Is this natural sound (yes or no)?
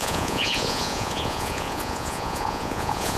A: no